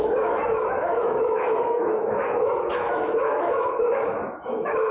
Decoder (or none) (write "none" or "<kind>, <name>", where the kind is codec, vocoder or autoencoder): autoencoder, DAC-VAE